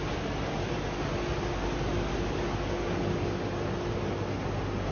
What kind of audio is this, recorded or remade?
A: recorded